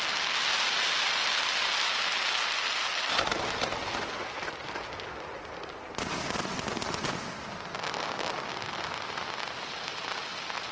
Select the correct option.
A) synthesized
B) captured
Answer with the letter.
B